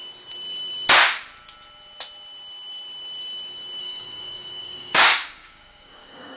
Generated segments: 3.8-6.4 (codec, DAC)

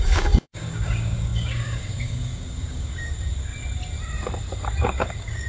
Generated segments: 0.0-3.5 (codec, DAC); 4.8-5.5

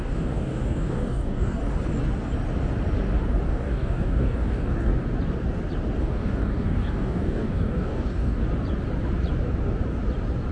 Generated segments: 0.0-1.6 (codec, DAC); 3.5-4.9; 6.0-8.4

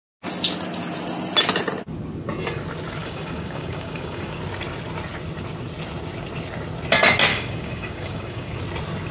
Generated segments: 3.0-4.4 (codec, DAC); 7.3-8.6

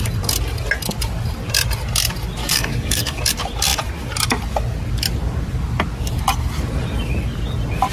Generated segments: 2.4-3.2 (codec, DAC)

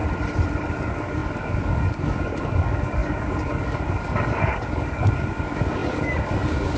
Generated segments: 0.7-6.8 (codec, DAC)

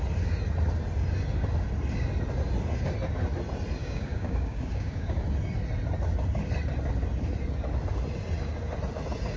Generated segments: 3.8-5.2 (codec, DAC)

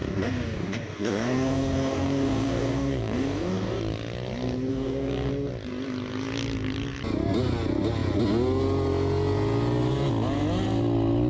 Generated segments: 0.0-3.8 (codec, DAC); 4.7-5.3